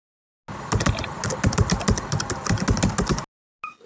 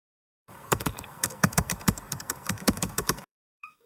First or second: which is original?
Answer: first